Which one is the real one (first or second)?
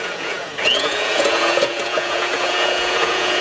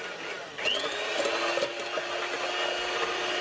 second